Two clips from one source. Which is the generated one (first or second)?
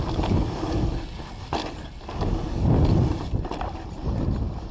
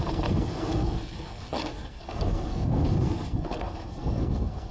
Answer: second